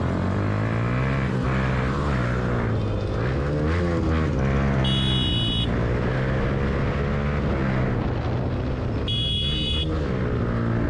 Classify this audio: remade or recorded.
recorded